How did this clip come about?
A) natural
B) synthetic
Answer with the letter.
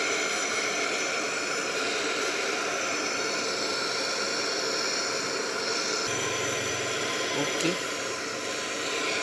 B